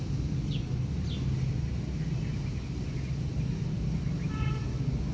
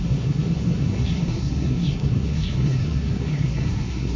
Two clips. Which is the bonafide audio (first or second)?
first